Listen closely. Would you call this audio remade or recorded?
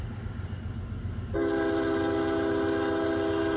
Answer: recorded